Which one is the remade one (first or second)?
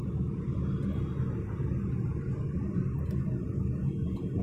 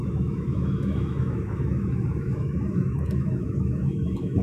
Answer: second